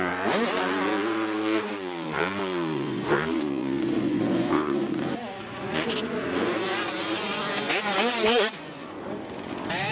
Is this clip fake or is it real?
fake